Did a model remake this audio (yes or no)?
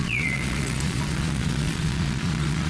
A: yes